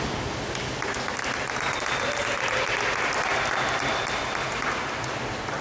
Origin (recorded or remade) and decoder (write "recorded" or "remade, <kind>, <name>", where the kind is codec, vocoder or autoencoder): recorded